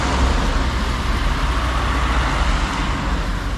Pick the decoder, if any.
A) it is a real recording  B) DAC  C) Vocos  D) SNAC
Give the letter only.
A